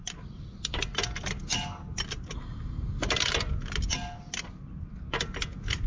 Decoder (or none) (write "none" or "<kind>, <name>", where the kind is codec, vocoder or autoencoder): none